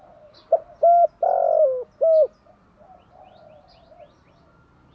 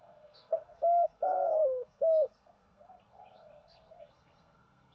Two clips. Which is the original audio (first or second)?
first